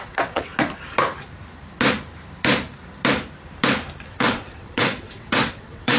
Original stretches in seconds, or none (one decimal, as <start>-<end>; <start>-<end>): 0.5-4.1